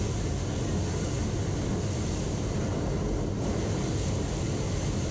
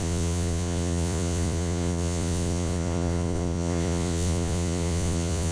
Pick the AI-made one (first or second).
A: second